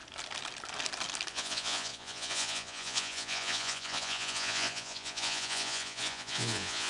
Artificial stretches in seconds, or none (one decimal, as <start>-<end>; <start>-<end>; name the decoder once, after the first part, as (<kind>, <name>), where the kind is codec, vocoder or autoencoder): 1.3-6.9 (vocoder, Vocos)